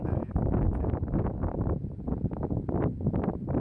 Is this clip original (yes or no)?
no